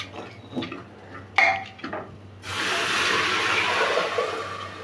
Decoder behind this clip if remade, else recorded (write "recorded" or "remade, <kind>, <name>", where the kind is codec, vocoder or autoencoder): recorded